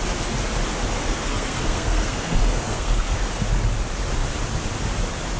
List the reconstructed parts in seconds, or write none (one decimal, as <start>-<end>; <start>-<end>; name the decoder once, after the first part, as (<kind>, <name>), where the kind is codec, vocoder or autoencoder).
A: 1.0-3.3 (codec, SNAC)